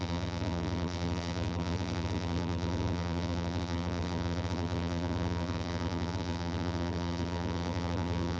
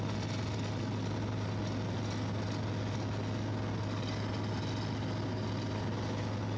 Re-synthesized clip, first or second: first